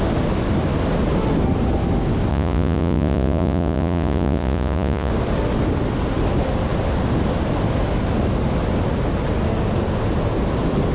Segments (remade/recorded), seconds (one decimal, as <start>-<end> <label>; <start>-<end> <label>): 0.0-2.3 recorded; 2.3-5.1 remade; 5.1-10.9 recorded